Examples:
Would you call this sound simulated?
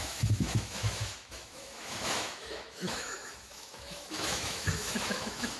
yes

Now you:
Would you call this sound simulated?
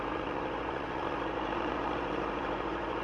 yes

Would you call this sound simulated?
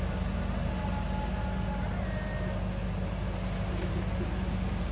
no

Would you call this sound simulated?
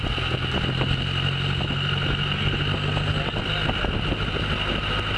no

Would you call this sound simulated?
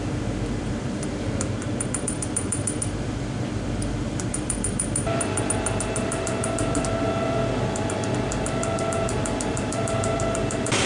yes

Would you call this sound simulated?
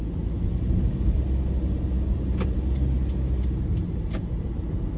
no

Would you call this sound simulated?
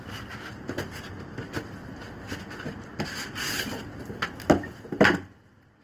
no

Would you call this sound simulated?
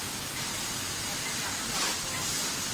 no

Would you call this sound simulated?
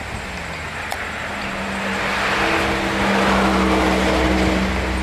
no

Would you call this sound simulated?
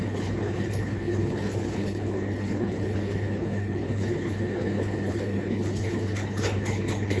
yes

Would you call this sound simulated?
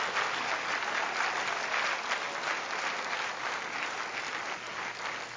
no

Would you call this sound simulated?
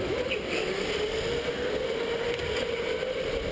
no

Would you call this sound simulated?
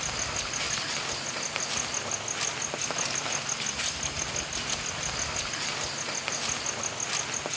no